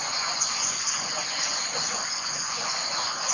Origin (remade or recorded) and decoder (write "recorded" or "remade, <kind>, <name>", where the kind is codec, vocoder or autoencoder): remade, vocoder, Vocos